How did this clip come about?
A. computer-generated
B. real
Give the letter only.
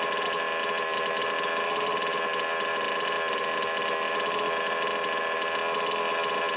B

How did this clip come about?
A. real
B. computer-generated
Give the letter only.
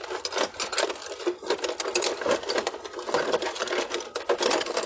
A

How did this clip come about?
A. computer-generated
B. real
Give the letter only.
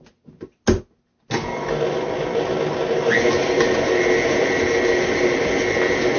B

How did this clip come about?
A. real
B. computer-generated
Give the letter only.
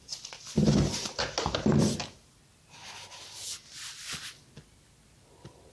A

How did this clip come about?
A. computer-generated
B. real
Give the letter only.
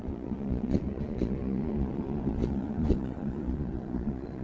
A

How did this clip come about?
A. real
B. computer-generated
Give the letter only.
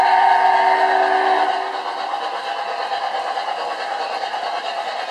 A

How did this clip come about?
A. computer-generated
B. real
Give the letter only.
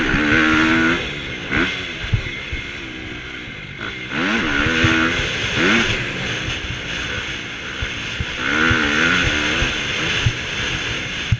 B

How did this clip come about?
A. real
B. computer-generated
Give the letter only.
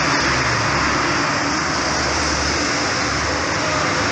A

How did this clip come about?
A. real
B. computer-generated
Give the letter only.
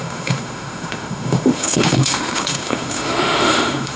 B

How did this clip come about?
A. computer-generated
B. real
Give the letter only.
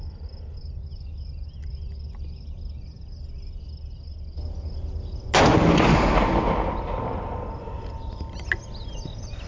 B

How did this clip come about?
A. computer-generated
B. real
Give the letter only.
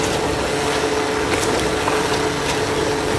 B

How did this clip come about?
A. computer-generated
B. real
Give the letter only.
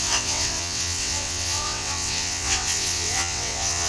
A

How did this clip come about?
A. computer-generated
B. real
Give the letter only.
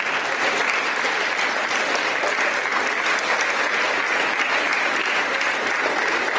B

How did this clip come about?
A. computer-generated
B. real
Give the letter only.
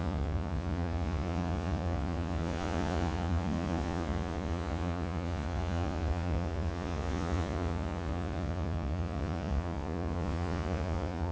A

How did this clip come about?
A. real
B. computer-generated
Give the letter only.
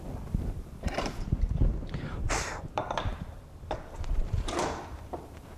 B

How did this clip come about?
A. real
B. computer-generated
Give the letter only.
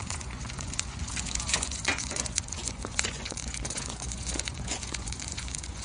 B